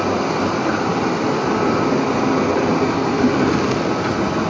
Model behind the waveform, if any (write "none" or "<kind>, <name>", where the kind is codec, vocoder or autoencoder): none